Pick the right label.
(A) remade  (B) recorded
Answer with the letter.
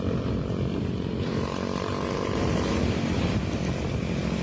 A